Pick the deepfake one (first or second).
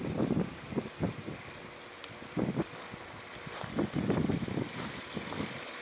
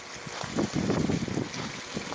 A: first